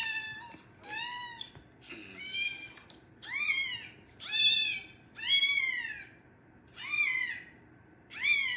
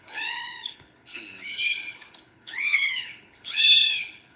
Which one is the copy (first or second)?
second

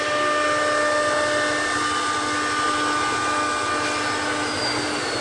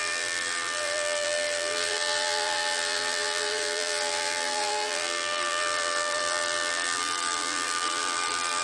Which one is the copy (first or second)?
second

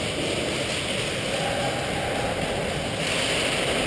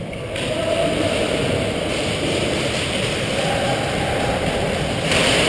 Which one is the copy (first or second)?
second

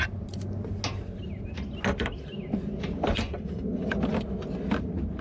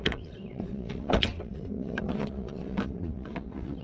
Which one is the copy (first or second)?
second